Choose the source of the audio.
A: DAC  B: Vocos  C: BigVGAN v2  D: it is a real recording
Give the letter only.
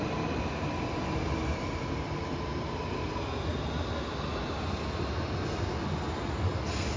D